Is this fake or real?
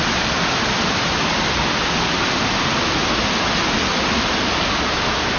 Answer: real